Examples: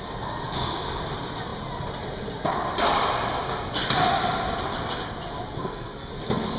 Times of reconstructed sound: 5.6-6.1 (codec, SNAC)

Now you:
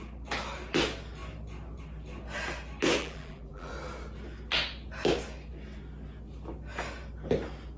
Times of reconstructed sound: 3.0-3.7 (vocoder, BigVGAN v2)

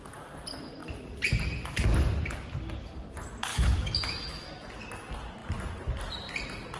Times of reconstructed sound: 3.5-4.7 (autoencoder, DAC-VAE)

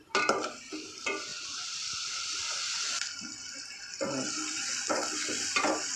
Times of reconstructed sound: none

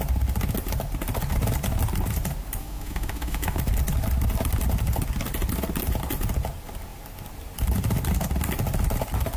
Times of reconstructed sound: 2.6-3.6 (autoencoder, DAC-VAE)